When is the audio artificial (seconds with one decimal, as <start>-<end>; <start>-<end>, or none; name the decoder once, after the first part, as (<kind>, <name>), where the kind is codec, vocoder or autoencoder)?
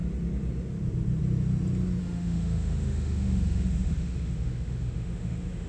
2.0-5.7 (autoencoder, DAC-VAE)